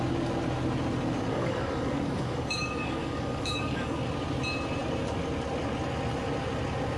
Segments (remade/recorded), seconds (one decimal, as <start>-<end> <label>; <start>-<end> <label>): 0.0-1.3 recorded; 1.3-4.0 remade; 4.0-7.0 recorded